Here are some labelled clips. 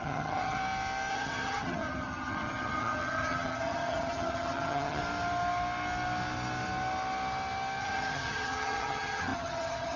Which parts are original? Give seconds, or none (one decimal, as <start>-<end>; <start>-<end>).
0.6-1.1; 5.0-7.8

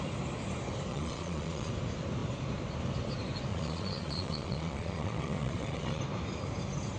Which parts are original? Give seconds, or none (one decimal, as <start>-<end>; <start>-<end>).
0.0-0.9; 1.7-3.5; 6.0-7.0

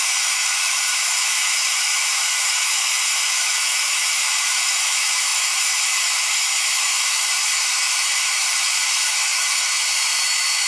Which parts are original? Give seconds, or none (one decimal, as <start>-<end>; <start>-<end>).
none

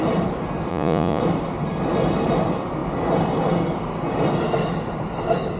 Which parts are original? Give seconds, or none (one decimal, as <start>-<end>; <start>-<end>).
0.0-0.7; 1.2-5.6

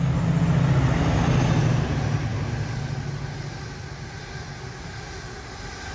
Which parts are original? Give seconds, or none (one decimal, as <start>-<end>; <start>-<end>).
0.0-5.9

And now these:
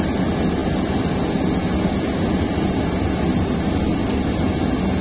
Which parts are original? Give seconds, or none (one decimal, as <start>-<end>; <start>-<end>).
0.0-5.0